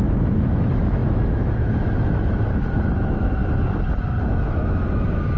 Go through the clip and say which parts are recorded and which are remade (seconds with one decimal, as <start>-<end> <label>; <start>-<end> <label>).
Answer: 0.0-3.4 remade; 3.4-4.2 recorded; 4.2-5.4 remade

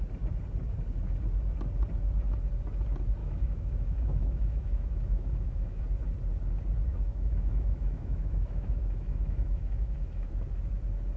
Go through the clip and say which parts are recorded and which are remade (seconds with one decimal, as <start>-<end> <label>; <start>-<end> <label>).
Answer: 0.0-3.2 recorded; 3.2-5.8 remade; 5.8-6.9 recorded; 6.9-10.3 remade; 10.3-11.2 recorded

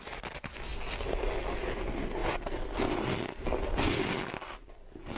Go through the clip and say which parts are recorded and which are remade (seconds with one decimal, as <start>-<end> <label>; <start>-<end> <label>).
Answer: 0.0-5.2 recorded